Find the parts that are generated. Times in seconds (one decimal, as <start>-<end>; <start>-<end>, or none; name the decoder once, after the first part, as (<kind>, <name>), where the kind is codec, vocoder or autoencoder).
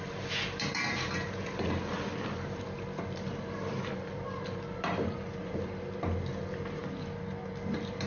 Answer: 0.0-6.8 (vocoder, BigVGAN v2); 7.4-8.1